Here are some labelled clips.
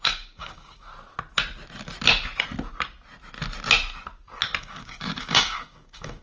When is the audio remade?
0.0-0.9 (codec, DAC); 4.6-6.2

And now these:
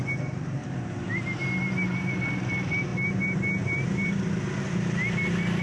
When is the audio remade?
0.6-1.5 (vocoder, BigVGAN v2)

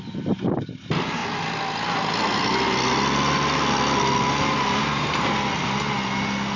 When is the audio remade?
none

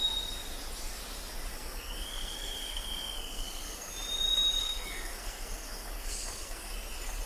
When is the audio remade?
1.5-3.9 (codec, SNAC); 4.6-6.7

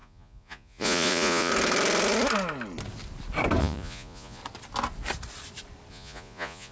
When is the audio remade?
0.0-1.5 (vocoder, Vocos); 3.6-4.4; 5.9-6.7

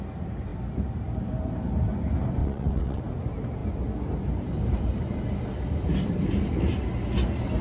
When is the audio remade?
2.4-3.0 (vocoder, WaveNeXt)

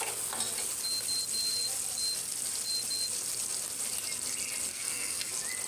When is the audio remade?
4.7-5.3 (codec, SNAC)